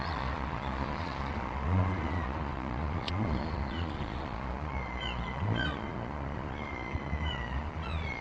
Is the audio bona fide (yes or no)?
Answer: no